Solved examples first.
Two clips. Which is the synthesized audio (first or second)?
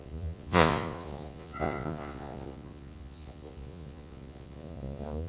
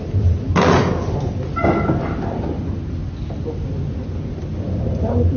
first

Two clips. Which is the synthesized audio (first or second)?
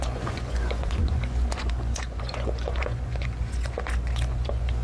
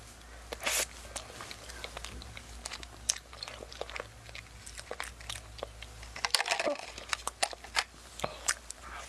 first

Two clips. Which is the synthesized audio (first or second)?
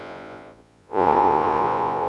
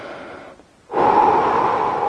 first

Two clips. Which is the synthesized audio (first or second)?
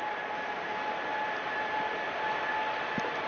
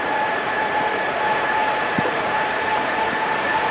second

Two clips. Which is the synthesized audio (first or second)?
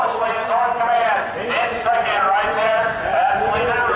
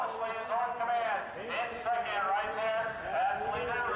first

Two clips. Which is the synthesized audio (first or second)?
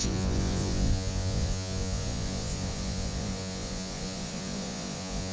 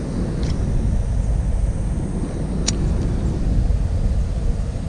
first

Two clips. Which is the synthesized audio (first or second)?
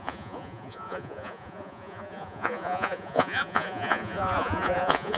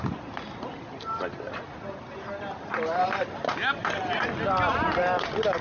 first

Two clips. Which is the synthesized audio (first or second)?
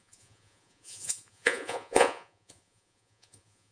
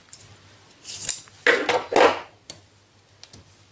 first